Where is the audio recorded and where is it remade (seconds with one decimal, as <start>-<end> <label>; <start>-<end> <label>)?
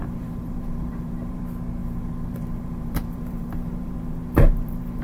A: 0.0-1.4 remade; 1.4-1.8 recorded; 1.8-5.0 remade